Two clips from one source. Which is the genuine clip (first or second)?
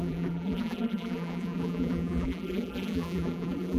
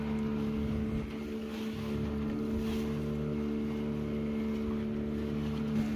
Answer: second